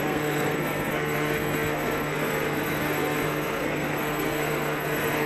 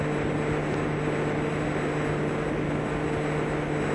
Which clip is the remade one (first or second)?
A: first